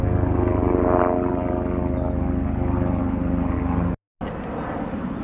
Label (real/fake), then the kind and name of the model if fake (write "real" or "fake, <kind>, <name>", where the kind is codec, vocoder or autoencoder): real